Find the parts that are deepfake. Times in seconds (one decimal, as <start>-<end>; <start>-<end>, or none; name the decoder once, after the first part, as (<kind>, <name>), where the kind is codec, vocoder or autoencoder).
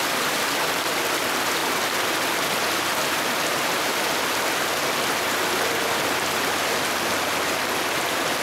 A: none